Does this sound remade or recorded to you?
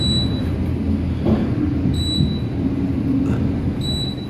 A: recorded